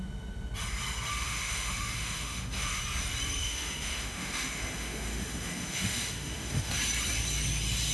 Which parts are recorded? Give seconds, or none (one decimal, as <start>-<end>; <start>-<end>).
0.0-1.1; 2.8-3.4; 6.7-7.9